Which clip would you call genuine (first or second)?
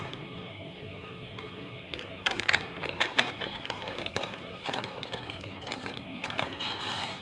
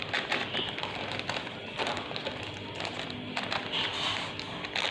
second